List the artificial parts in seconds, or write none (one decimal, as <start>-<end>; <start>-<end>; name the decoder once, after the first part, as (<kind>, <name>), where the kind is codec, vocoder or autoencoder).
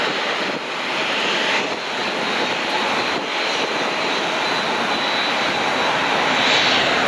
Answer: none